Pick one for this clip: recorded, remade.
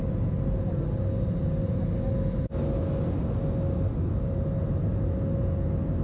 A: recorded